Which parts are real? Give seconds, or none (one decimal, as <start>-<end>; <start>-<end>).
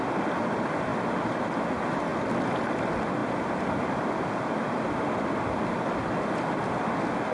0.0-7.3